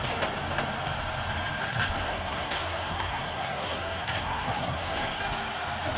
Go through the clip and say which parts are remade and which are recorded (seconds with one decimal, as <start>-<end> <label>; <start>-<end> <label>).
0.0-1.6 recorded; 1.6-5.2 remade; 5.2-6.0 recorded